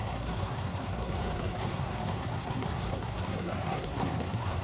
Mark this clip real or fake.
fake